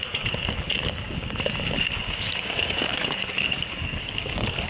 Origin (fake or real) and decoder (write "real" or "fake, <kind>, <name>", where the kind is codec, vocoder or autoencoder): fake, codec, DAC